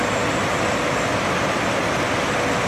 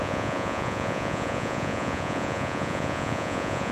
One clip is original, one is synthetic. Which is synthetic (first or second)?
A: second